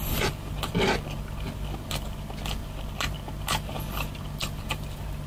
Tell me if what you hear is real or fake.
fake